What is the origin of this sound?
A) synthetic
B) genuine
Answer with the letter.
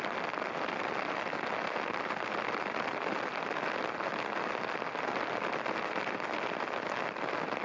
B